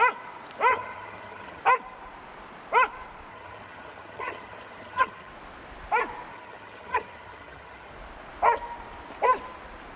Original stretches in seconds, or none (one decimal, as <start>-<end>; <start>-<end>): 0.0-0.7; 1.6-3.3; 5.3-6.3; 7.9-10.0